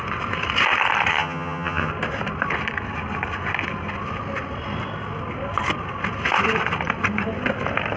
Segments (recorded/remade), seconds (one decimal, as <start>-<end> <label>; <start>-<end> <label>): 0.0-1.1 recorded; 1.1-1.9 remade; 1.9-8.0 recorded